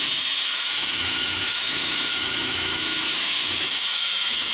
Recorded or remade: remade